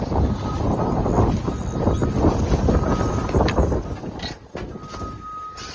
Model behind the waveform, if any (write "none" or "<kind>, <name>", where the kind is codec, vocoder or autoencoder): none